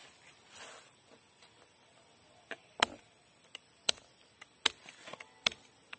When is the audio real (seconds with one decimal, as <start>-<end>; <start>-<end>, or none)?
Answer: 0.0-6.0